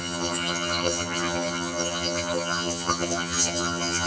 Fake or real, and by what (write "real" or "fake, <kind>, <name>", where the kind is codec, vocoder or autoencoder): fake, vocoder, HiFi-GAN